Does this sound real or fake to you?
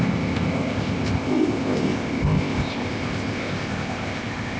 fake